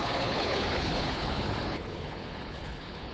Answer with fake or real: fake